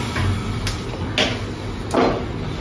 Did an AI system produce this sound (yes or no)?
no